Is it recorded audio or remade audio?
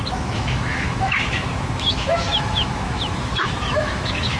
remade